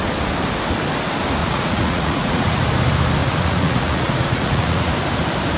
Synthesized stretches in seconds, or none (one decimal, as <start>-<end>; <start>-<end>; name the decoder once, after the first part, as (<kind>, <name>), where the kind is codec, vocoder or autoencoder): 1.4-2.6 (vocoder, Vocos); 3.2-4.9